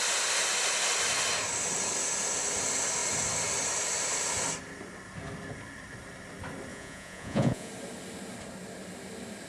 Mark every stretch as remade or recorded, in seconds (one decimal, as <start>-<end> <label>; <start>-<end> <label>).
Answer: 0.0-6.7 recorded; 6.7-7.7 remade; 7.7-9.5 recorded